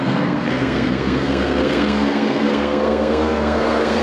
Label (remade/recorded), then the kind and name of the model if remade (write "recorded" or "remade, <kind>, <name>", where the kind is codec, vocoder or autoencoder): remade, codec, SNAC